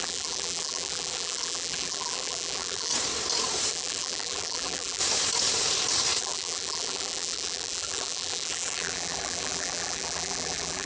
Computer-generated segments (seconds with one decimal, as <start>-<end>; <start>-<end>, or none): 0.0-2.9; 3.7-5.0; 6.2-10.9